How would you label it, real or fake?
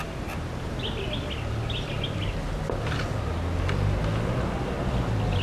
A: real